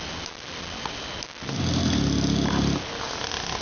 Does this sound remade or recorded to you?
recorded